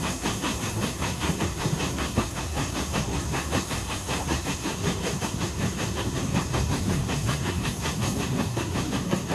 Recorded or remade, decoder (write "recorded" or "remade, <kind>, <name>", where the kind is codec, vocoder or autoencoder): remade, codec, SNAC